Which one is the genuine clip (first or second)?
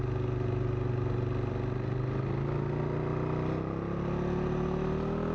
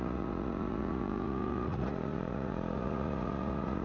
first